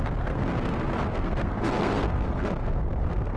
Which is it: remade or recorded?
remade